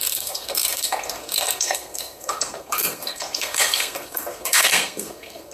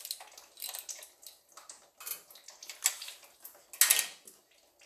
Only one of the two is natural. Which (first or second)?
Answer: second